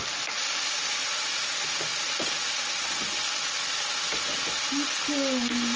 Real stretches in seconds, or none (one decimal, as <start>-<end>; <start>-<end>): 0.0-5.8